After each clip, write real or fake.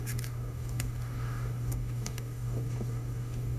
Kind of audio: fake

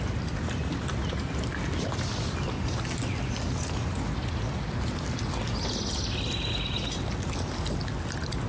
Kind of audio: real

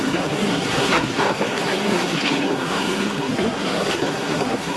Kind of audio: fake